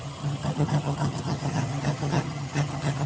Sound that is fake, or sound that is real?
fake